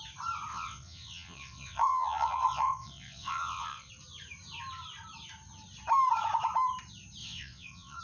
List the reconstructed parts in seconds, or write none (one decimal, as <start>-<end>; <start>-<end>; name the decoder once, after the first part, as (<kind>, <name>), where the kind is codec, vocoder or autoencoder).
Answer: 0.5-3.9 (vocoder, WaveNeXt); 7.2-8.0